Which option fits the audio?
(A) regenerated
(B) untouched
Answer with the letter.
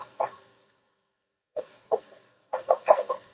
A